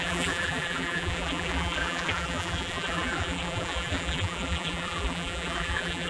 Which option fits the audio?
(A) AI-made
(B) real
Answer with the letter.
A